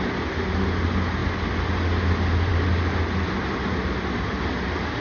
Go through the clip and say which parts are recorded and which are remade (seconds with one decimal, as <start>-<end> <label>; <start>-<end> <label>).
0.0-5.0 recorded